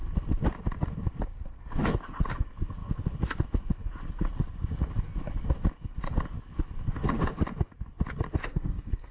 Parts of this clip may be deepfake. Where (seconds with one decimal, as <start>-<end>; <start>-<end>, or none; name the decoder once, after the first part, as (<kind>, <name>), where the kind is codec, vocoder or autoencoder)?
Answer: 8.4-9.1 (codec, SNAC)